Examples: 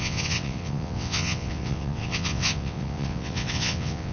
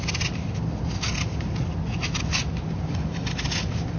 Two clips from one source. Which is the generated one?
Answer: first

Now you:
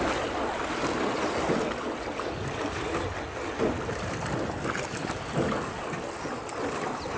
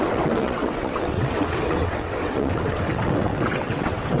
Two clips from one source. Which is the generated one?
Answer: second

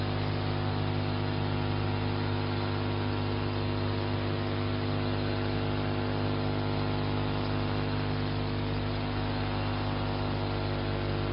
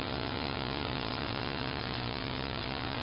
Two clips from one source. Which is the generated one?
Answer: second